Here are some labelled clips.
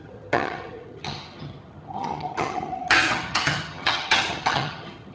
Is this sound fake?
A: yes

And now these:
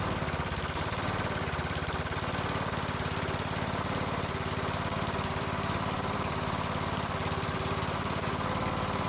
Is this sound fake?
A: yes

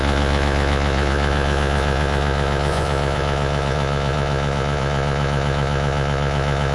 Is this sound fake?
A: yes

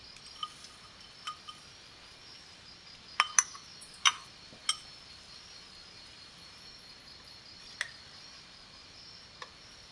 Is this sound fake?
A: no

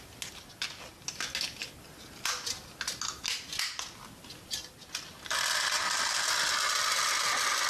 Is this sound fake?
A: no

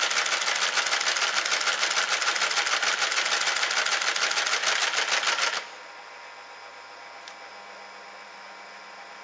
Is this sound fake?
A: no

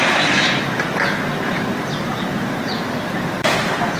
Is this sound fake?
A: yes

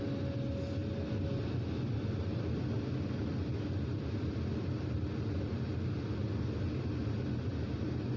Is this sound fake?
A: no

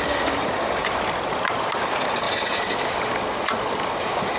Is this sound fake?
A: no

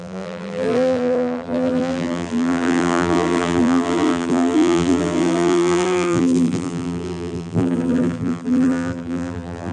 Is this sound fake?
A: yes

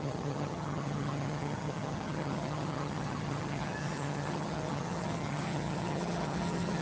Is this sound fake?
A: yes